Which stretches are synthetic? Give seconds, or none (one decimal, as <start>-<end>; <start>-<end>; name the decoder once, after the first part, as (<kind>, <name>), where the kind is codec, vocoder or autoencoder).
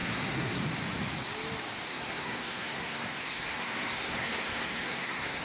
0.0-0.6 (codec, SNAC); 1.9-5.4